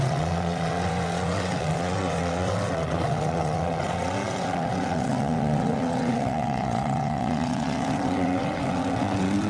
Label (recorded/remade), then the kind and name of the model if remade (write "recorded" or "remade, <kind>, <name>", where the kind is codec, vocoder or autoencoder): remade, vocoder, WaveNeXt